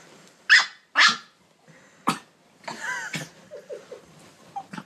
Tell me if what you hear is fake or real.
real